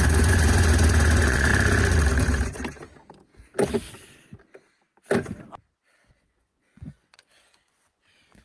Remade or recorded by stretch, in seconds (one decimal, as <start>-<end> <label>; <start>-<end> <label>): 0.0-1.5 remade; 1.5-6.1 recorded; 6.1-8.4 remade